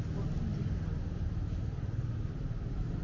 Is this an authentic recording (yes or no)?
yes